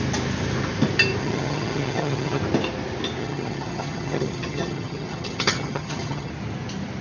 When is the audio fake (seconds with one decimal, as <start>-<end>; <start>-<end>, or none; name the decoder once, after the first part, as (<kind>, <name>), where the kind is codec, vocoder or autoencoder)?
1.2-2.4 (vocoder, HiFi-GAN); 3.2-6.3